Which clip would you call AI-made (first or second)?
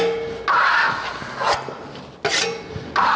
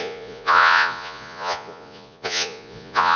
second